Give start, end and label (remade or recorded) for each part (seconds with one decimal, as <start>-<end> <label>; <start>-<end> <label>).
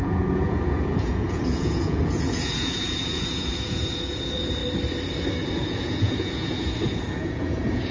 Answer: 0.0-4.6 remade; 4.6-5.5 recorded; 5.5-7.9 remade